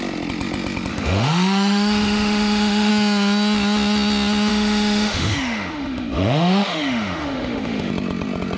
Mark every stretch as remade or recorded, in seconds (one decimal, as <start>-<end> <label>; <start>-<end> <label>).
0.0-0.9 recorded; 0.9-2.9 remade; 2.9-4.5 recorded; 4.5-7.9 remade; 7.9-8.6 recorded